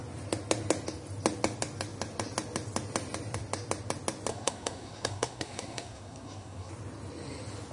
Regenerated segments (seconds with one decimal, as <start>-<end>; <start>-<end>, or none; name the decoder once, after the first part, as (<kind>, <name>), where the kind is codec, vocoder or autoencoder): 4.3-6.7 (codec, SNAC)